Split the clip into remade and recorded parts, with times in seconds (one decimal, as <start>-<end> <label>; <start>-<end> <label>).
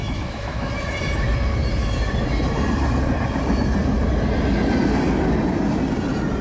0.0-0.7 remade; 0.7-6.4 recorded